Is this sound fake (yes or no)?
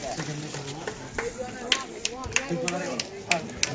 no